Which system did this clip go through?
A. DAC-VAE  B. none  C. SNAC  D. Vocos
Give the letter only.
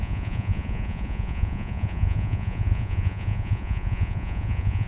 D